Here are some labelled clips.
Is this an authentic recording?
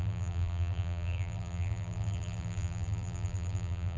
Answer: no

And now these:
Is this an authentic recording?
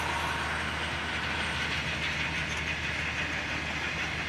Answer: yes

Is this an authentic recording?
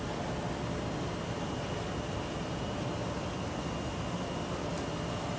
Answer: no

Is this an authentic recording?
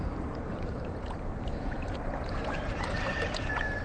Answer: no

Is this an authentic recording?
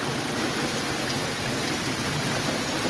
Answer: no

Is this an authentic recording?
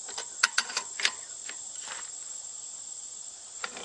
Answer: no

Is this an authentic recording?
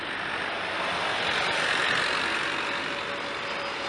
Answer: yes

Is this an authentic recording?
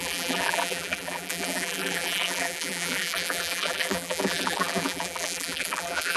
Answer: no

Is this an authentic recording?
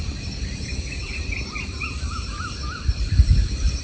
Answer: no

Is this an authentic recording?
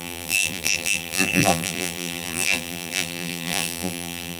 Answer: no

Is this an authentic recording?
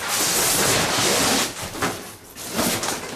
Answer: yes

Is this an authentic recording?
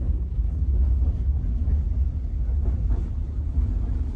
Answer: yes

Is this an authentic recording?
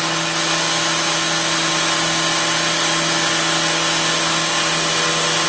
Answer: yes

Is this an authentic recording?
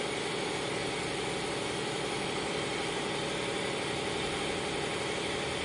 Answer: no